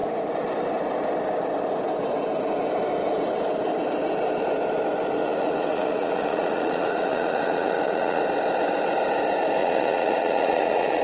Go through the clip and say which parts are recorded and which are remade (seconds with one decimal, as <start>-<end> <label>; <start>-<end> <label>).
0.0-5.2 recorded; 5.2-8.2 remade; 8.2-9.6 recorded; 9.6-11.0 remade